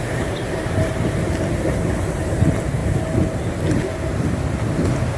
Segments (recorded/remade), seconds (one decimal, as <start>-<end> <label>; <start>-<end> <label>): 0.0-0.9 remade; 0.9-5.2 recorded